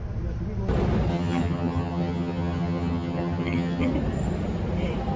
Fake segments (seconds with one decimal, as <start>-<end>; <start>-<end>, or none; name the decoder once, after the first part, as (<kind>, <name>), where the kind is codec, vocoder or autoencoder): 1.1-3.9 (vocoder, HiFi-GAN)